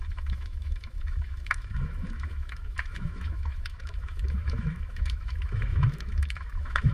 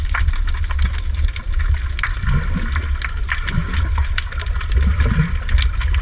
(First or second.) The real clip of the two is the second